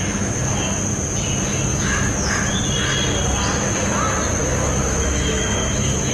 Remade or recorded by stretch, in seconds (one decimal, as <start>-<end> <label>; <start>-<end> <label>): 0.0-1.7 recorded; 1.7-2.3 remade; 2.3-4.4 recorded; 4.4-6.1 remade